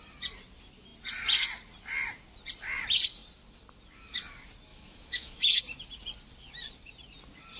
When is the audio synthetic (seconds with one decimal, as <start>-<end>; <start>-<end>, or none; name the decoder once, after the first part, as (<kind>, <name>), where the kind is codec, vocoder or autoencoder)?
4.7-5.6 (autoencoder, DAC-VAE)

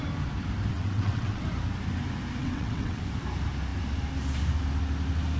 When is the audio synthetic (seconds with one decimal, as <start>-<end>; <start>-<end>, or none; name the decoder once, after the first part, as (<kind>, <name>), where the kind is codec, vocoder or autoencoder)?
0.7-1.4 (vocoder, WaveNeXt); 2.4-3.0

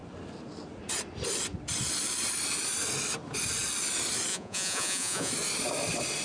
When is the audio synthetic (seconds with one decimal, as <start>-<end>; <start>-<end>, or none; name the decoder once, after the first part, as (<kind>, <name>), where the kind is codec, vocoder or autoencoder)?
4.3-5.3 (vocoder, Vocos)

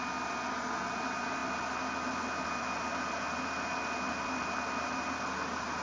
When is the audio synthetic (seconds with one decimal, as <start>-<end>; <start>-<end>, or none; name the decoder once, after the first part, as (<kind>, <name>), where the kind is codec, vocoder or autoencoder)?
none

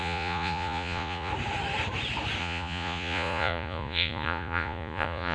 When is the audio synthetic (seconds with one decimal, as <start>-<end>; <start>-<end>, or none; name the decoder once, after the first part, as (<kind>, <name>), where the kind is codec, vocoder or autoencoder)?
0.0-1.3 (vocoder, Vocos); 2.4-5.3

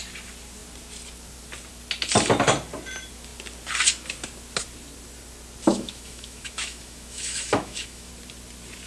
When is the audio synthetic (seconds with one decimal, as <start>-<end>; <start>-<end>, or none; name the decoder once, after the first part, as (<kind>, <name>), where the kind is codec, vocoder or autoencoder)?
5.7-8.1 (autoencoder, DAC-VAE)

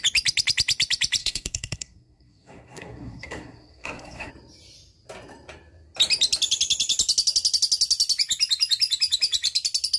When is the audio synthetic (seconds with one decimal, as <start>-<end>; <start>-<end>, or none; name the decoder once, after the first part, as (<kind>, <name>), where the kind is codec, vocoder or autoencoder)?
1.2-4.3 (codec, SNAC)